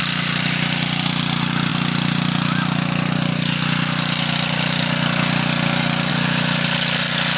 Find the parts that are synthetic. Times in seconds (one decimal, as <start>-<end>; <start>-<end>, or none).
none